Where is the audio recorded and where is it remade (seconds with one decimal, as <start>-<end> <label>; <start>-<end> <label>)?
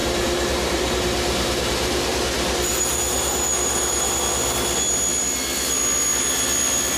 0.0-4.2 remade; 4.2-7.0 recorded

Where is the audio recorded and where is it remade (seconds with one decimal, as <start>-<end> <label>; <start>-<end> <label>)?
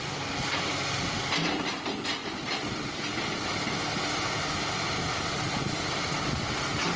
0.0-3.1 remade; 3.1-5.1 recorded; 5.1-7.0 remade